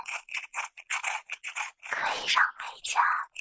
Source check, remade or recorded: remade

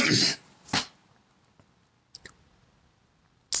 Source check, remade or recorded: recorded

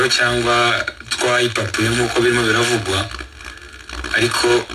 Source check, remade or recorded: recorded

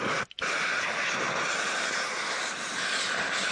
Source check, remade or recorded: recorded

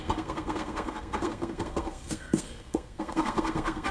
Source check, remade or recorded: remade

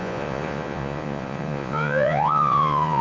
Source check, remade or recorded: remade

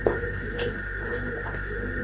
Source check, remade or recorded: remade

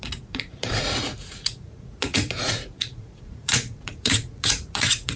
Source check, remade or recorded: remade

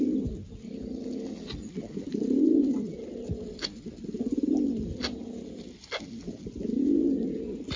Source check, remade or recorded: recorded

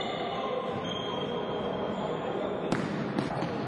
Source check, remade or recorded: recorded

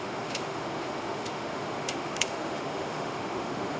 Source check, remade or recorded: remade